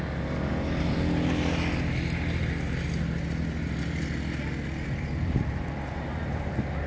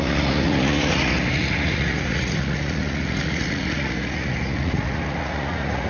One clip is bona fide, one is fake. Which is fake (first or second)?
second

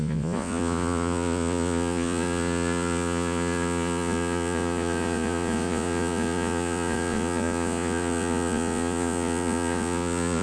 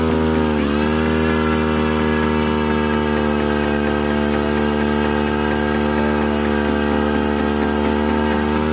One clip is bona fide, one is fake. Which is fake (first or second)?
first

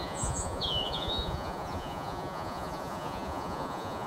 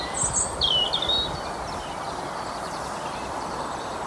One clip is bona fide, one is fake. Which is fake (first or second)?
first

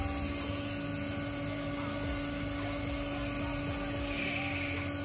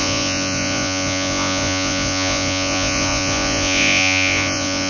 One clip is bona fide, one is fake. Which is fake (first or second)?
second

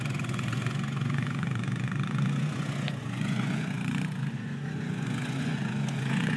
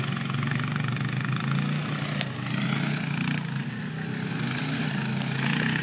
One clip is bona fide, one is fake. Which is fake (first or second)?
first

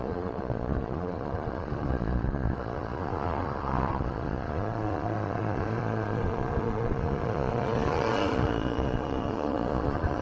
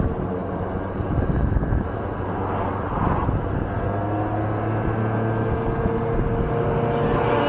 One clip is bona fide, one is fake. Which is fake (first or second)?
first